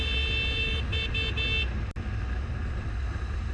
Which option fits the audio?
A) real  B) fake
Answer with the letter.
A